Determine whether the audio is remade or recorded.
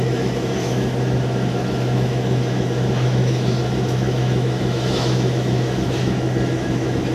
remade